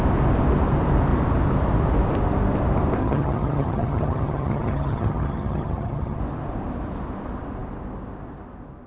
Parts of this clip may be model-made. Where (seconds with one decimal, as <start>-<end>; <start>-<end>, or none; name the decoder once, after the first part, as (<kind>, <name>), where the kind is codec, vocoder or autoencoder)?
3.0-6.2 (vocoder, HiFi-GAN)